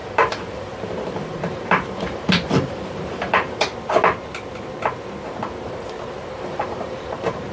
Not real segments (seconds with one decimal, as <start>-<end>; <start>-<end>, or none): 0.0-3.7; 6.3-7.5